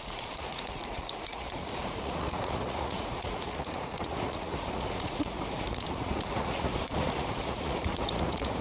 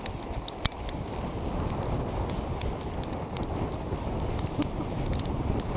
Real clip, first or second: second